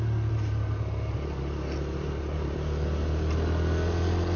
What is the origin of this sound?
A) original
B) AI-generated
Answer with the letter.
A